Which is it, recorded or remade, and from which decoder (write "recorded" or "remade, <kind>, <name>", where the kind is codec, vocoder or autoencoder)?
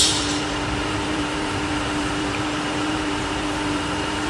remade, vocoder, BigVGAN v2